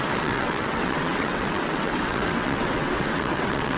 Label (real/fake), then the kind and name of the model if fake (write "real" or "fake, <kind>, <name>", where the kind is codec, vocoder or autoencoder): fake, vocoder, WaveNeXt